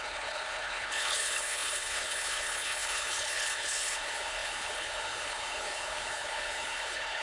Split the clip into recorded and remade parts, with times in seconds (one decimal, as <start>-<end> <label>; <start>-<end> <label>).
0.0-7.2 remade